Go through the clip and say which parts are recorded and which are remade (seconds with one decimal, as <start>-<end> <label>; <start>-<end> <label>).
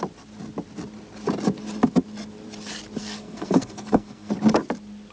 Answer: 0.0-3.0 recorded; 3.0-4.3 remade; 4.3-5.1 recorded